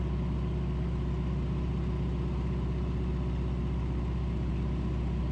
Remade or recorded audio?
recorded